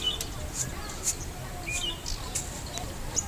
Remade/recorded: recorded